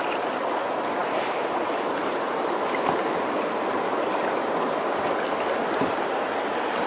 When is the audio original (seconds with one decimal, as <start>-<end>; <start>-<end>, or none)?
0.0-1.0; 1.6-6.9